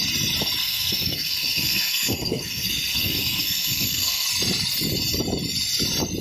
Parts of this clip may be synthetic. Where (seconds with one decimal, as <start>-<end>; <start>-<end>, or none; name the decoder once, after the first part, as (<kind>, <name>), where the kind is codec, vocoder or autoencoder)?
0.6-4.3 (codec, SNAC)